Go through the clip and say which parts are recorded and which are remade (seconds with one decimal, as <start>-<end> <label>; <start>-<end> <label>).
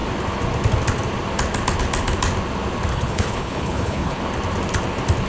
0.0-2.9 recorded; 2.9-4.2 remade; 4.2-5.3 recorded